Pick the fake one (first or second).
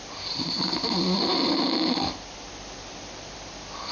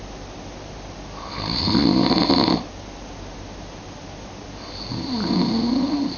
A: first